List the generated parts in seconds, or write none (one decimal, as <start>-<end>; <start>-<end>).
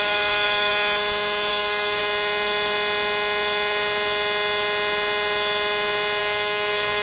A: 0.0-0.7; 1.5-2.0; 6.2-7.0